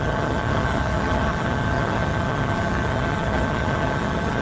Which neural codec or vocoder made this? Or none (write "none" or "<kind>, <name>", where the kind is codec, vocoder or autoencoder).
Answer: vocoder, HiFi-GAN